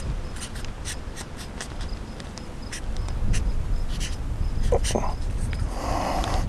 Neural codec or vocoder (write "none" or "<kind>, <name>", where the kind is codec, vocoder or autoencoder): none